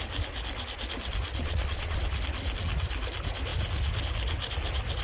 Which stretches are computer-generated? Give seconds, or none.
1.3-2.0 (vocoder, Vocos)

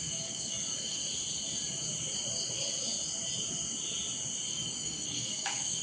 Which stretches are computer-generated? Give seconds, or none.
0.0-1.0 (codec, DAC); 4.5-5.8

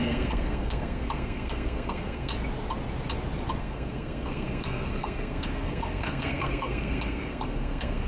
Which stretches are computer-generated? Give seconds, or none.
0.0-2.3 (codec, SNAC); 3.6-8.1

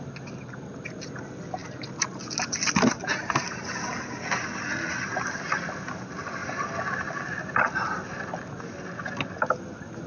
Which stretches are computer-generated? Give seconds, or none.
none

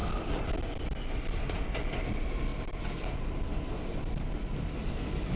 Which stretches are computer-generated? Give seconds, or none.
0.0-1.7 (vocoder, BigVGAN v2); 2.5-4.2

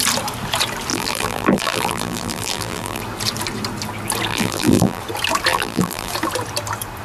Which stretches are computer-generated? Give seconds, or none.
0.9-3.0 (vocoder, BigVGAN v2); 4.3-5.0; 5.5-6.1